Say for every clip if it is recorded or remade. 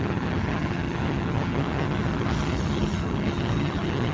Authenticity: remade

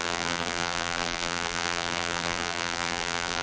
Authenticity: remade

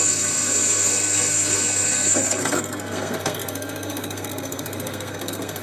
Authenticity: remade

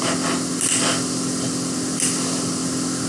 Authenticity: recorded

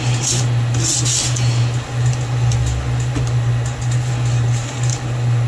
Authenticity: recorded